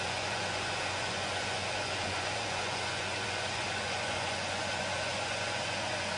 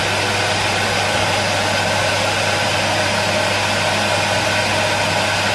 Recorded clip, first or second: second